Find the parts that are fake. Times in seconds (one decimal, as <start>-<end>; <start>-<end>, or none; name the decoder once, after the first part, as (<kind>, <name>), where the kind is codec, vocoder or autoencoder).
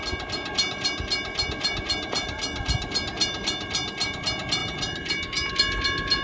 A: none